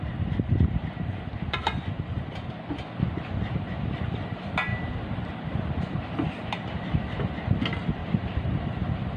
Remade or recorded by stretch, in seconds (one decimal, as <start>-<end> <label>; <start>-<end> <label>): 0.0-8.0 recorded; 8.0-8.7 remade; 8.7-9.2 recorded